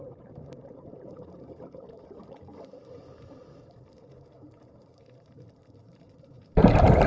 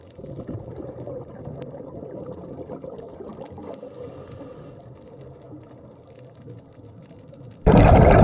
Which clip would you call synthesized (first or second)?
first